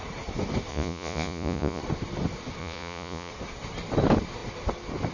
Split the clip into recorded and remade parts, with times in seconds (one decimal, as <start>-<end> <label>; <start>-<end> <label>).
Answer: 0.0-0.7 recorded; 0.7-1.8 remade; 1.8-2.6 recorded; 2.6-3.3 remade; 3.3-5.1 recorded